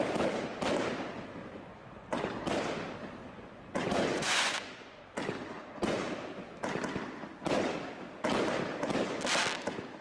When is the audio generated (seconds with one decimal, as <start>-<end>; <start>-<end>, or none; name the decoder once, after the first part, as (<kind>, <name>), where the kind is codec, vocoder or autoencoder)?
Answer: 1.4-2.4 (vocoder, Vocos); 3.2-5.0; 5.5-6.1